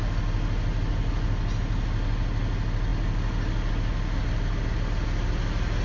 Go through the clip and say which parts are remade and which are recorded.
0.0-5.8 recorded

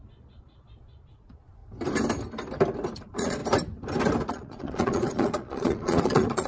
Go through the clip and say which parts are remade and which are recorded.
0.0-1.6 remade; 1.6-3.0 recorded; 3.0-3.4 remade; 3.4-4.3 recorded; 4.3-6.5 remade

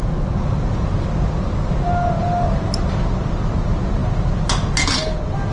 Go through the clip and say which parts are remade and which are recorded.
0.0-5.5 recorded

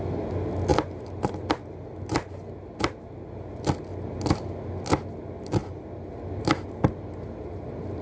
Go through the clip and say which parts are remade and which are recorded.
0.0-8.0 recorded

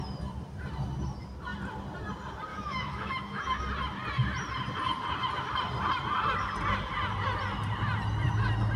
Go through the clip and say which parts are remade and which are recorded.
0.0-2.5 recorded; 2.5-3.6 remade; 3.6-8.8 recorded

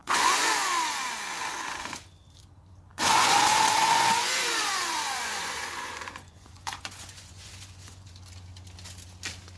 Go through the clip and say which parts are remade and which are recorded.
0.0-0.7 remade; 0.7-2.9 recorded; 2.9-8.1 remade; 8.1-9.6 recorded